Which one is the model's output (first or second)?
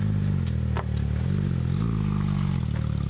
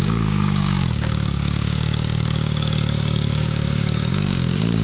second